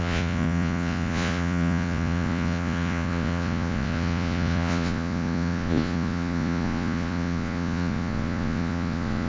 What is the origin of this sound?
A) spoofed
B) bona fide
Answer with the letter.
A